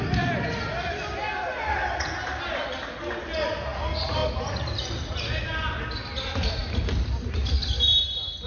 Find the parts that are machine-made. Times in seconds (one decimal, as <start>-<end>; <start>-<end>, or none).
none